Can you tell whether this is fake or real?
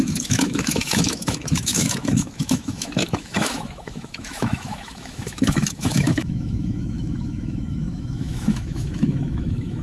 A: fake